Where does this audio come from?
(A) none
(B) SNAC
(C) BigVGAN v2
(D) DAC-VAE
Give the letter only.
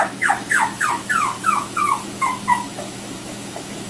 D